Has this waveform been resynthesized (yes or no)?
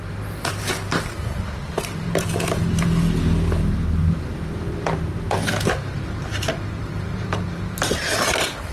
yes